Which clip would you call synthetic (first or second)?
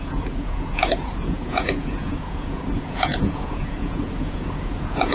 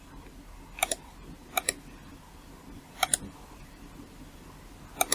first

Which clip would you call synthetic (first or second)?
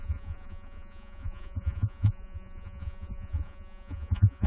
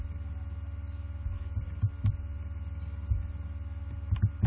first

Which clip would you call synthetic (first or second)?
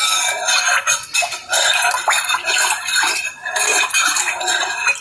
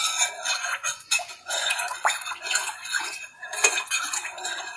second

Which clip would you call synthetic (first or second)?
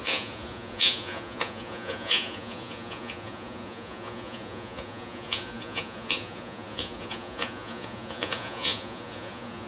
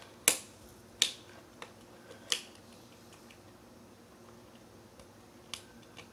first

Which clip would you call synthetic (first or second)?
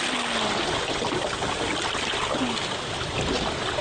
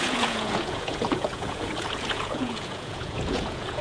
second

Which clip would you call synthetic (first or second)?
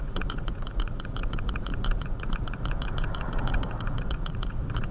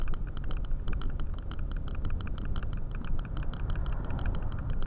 first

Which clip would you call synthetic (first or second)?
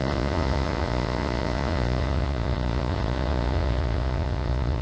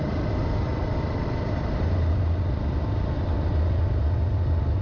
first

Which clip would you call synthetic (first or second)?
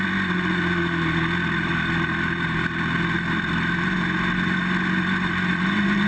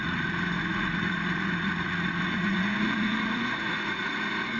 second